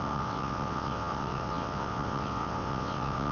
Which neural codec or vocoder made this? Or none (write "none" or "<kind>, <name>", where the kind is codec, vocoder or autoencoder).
vocoder, WaveNeXt